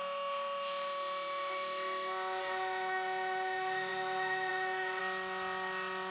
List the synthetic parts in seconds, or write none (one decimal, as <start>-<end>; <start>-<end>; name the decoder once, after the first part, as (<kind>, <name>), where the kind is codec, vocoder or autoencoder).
0.0-5.0 (autoencoder, DAC-VAE)